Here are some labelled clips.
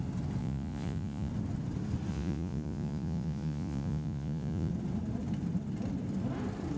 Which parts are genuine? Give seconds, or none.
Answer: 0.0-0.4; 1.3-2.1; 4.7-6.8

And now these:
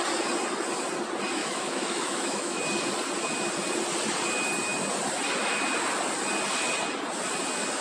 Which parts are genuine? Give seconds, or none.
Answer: 0.0-1.4; 2.6-7.8

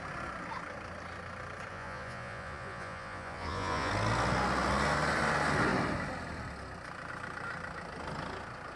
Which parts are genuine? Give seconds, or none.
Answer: 0.0-1.7; 3.9-8.8

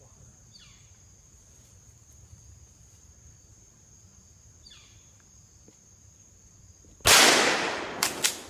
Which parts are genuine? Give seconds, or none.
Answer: 0.0-8.5

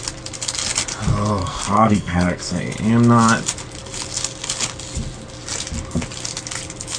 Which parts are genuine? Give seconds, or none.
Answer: 0.0-1.4; 2.6-7.0